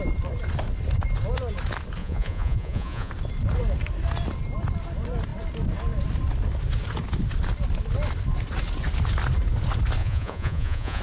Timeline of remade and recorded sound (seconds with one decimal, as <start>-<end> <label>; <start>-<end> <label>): 0.0-2.0 recorded; 2.0-3.1 remade; 3.1-10.0 recorded; 10.0-11.0 remade